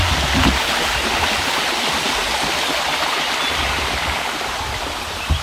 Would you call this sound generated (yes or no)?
no